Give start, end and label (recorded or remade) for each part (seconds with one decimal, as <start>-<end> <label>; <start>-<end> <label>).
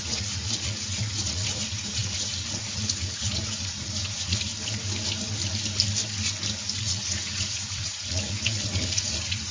0.0-4.5 remade; 4.5-6.8 recorded; 6.8-9.5 remade